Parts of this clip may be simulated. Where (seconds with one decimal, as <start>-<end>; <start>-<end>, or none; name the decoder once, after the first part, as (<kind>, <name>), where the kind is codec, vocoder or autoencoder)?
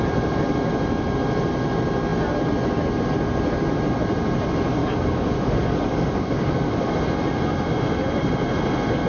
4.8-6.9 (codec, DAC)